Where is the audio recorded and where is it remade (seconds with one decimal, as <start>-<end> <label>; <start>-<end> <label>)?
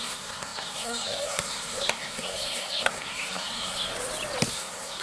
0.0-3.9 remade; 3.9-4.5 recorded; 4.5-5.0 remade